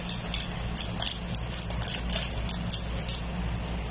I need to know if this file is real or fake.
real